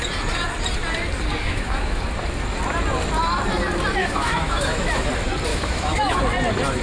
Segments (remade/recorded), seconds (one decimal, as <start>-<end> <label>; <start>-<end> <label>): 0.0-1.4 recorded; 1.4-2.0 remade; 2.0-4.0 recorded; 4.0-5.1 remade; 5.1-5.5 recorded; 5.5-6.2 remade; 6.2-6.8 recorded